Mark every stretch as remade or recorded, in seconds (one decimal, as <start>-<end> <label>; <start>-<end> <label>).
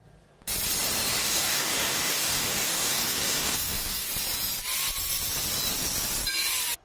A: 0.0-1.2 recorded; 1.2-4.1 remade; 4.1-6.8 recorded